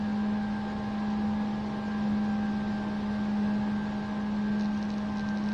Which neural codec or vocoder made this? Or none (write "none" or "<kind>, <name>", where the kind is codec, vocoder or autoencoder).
none